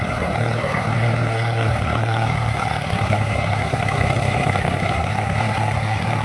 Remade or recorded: remade